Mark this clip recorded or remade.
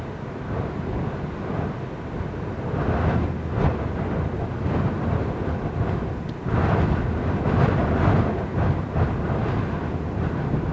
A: recorded